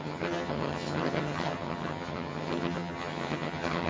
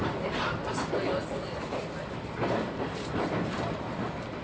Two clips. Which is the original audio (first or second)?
second